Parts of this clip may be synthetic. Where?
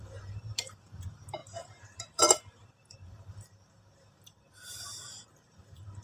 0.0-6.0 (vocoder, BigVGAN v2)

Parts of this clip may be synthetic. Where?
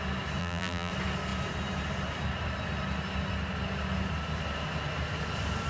0.4-0.9 (vocoder, BigVGAN v2)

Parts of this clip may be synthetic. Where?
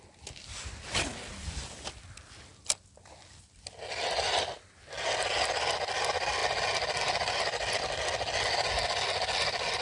none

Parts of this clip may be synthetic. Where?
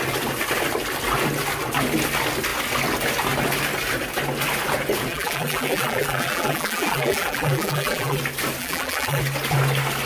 5.1-8.2 (vocoder, BigVGAN v2); 8.6-9.2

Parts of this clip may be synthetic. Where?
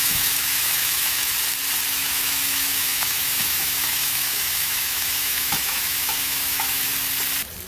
0.0-1.3 (autoencoder, DAC-VAE); 1.9-6.9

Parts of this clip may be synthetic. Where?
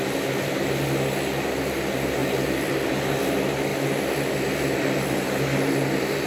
none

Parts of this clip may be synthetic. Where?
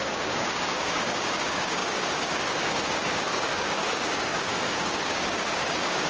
0.0-6.1 (codec, DAC)